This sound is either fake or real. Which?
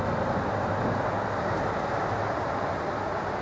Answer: real